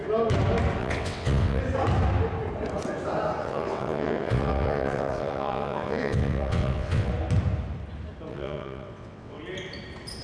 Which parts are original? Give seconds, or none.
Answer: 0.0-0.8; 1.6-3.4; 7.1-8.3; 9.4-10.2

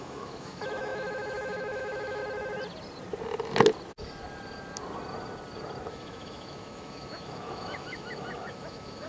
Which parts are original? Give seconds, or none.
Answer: 2.2-5.9

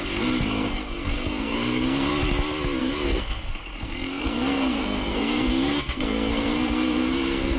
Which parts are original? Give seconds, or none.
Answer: 2.1-2.8

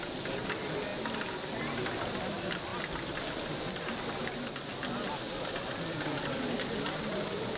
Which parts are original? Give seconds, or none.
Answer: 0.0-7.6

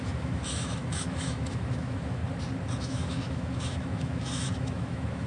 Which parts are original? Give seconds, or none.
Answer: 2.2-2.8

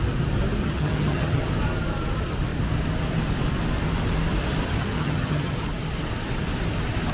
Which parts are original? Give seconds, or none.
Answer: 0.0-0.6; 1.4-4.8; 5.6-7.1